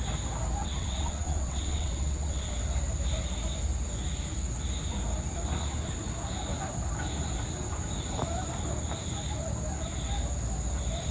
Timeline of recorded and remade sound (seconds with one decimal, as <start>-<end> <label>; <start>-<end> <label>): 0.0-0.6 recorded; 0.6-2.5 remade; 2.5-11.1 recorded